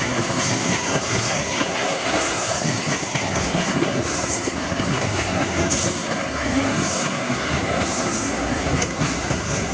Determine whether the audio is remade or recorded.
remade